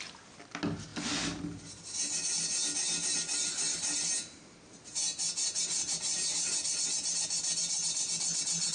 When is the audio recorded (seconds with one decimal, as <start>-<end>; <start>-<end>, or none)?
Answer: 0.0-8.7